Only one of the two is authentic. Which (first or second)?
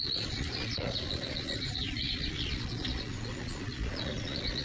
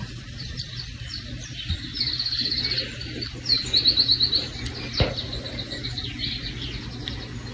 second